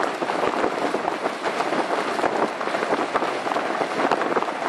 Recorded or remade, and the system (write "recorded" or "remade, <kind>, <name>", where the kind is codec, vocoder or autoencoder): recorded